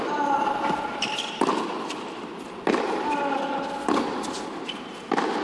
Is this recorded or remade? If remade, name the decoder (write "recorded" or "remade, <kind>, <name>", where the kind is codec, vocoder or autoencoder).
remade, vocoder, BigVGAN v2